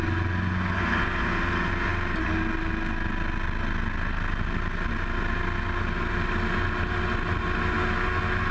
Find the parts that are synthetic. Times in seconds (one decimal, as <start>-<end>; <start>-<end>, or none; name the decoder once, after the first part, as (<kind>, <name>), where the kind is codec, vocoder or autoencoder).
none